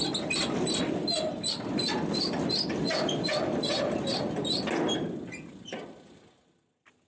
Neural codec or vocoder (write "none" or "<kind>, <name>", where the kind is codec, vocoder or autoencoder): none